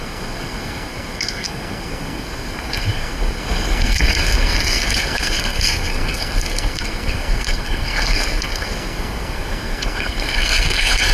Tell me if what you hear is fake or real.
fake